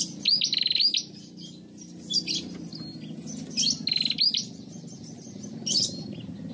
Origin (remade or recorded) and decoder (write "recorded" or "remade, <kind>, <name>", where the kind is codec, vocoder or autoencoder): recorded